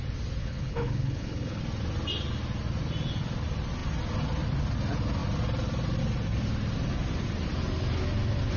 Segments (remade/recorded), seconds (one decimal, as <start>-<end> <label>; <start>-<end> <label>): 0.0-0.4 recorded; 0.4-1.6 remade; 1.6-8.6 recorded